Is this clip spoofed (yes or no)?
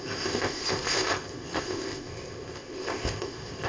yes